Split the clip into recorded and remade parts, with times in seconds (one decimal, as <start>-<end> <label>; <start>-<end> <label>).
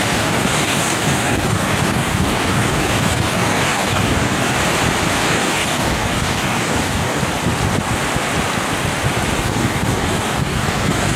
0.0-4.6 remade; 4.6-5.1 recorded; 5.1-7.2 remade; 7.2-9.4 recorded; 9.4-11.2 remade